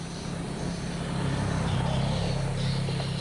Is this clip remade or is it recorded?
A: recorded